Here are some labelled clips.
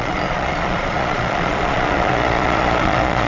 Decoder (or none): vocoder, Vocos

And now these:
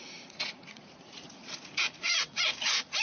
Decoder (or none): vocoder, Vocos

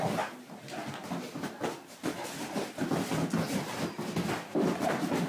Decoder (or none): none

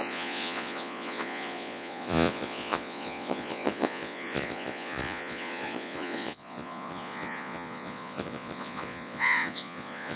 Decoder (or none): vocoder, Vocos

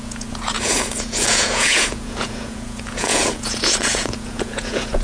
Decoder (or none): vocoder, Vocos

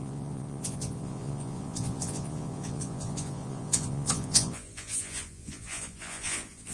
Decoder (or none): vocoder, Vocos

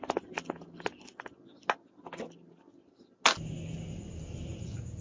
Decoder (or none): none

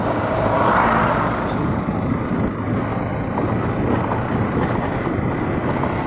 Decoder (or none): none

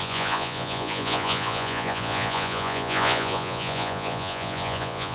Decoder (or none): vocoder, Vocos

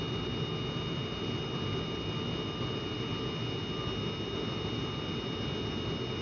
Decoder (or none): none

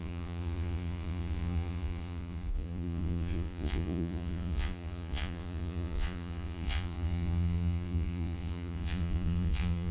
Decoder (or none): vocoder, Vocos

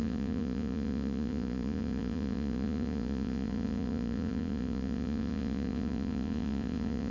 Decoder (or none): vocoder, Vocos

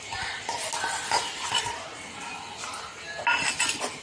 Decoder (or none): none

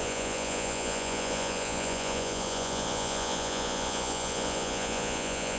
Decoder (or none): vocoder, Vocos